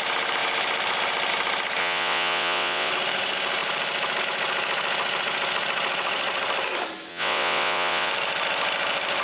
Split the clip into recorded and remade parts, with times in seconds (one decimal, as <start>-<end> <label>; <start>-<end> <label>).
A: 0.0-1.8 recorded; 1.8-2.9 remade; 2.9-7.1 recorded; 7.1-8.1 remade; 8.1-9.2 recorded